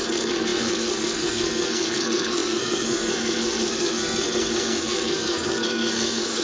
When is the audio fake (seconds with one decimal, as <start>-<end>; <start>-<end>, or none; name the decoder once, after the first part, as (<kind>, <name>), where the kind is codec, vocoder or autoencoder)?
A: 0.0-6.4 (codec, SNAC)